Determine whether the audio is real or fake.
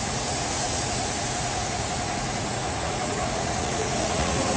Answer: fake